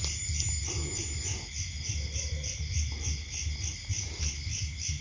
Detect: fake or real real